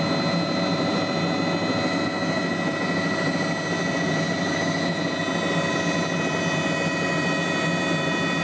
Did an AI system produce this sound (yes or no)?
no